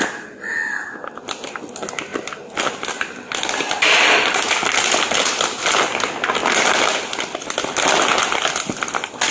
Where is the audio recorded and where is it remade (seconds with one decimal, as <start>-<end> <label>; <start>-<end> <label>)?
0.0-9.3 recorded